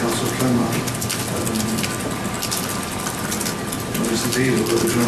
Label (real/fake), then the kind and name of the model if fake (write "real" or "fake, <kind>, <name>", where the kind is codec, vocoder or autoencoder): real